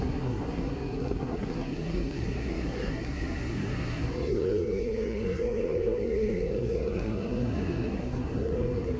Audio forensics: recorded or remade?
remade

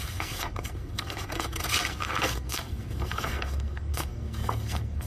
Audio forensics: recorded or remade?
remade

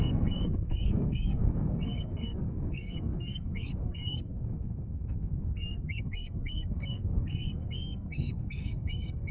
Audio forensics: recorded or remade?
remade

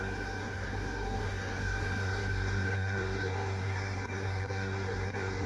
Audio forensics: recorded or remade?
remade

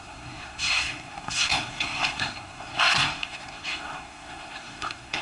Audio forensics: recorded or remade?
remade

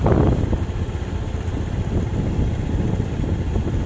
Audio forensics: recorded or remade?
recorded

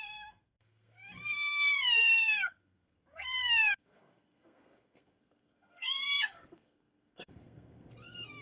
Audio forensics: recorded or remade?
remade